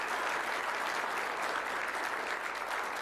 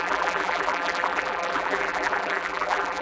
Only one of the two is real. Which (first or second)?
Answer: first